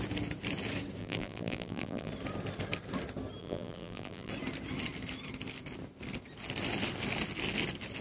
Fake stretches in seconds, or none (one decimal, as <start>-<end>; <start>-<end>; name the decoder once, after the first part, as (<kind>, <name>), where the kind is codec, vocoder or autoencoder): 1.0-2.1 (vocoder, BigVGAN v2); 3.4-4.3

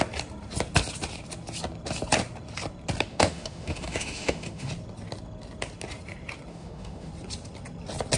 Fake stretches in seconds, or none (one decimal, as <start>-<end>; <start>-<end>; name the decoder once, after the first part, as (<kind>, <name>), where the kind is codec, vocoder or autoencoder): 3.1-4.7 (autoencoder, DAC-VAE); 6.5-7.1

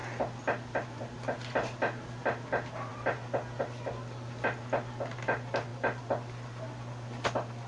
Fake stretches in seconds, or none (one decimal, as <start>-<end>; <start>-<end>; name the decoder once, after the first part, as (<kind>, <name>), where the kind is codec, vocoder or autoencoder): none

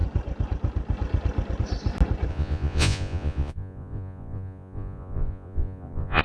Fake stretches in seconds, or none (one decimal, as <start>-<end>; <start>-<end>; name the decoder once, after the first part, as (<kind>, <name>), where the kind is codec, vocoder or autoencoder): 2.3-6.2 (vocoder, Vocos)